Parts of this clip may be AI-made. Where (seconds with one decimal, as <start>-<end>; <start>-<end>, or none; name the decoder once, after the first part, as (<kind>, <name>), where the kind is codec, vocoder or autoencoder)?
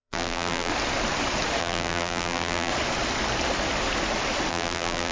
0.0-0.7 (vocoder, BigVGAN v2); 1.6-2.7; 4.5-5.1